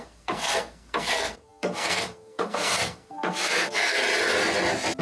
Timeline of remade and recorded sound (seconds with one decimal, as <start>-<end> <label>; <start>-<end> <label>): 0.0-4.0 remade; 4.0-5.0 recorded